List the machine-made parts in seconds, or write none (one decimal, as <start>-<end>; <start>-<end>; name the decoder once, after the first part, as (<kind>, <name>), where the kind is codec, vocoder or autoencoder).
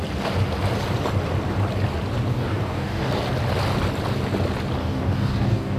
2.3-3.1 (codec, DAC); 4.8-5.8